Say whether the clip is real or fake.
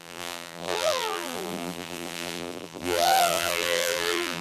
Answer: fake